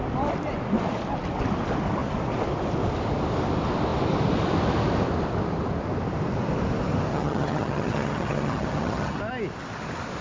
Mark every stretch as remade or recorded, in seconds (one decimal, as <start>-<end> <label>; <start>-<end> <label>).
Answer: 0.0-7.1 recorded; 7.1-9.2 remade; 9.2-10.2 recorded